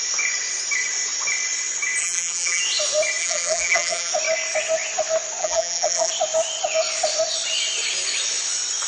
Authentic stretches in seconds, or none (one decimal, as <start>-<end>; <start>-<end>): 0.0-2.0; 2.6-3.2; 4.1-5.4; 6.1-8.9